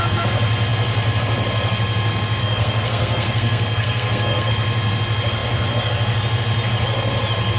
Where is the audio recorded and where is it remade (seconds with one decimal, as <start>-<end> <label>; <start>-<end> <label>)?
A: 0.0-2.4 recorded; 2.4-4.5 remade; 4.5-7.6 recorded